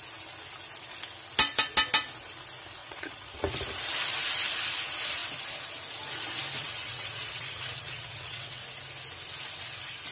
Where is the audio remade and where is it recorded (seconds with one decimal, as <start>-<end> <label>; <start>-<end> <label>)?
0.0-2.8 recorded; 2.8-3.4 remade; 3.4-6.6 recorded; 6.6-8.6 remade; 8.6-10.1 recorded